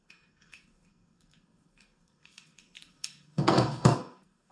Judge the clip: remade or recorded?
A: remade